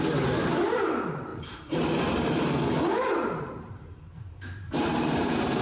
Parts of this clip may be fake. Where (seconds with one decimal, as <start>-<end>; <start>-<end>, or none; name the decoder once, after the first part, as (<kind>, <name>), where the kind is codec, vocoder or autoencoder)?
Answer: 0.0-5.6 (vocoder, BigVGAN v2)